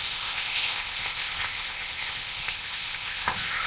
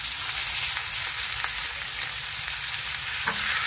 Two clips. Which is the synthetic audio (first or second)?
first